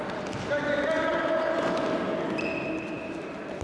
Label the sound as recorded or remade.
recorded